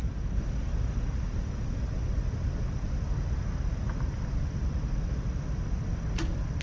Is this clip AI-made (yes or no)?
no